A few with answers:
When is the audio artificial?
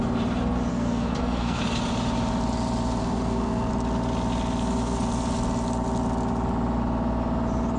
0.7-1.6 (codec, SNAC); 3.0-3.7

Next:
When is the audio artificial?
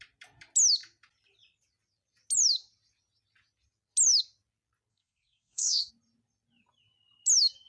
4.9-5.9 (codec, SNAC)